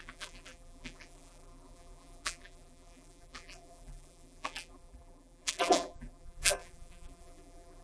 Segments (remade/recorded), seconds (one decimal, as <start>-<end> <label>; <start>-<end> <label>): 0.0-7.8 remade